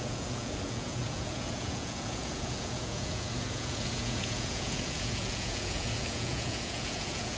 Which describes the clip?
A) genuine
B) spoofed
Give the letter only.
B